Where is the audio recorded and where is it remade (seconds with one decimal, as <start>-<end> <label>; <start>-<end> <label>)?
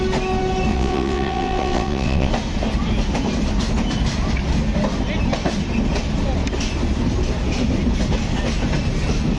0.0-0.7 recorded; 0.7-2.3 remade; 2.3-9.4 recorded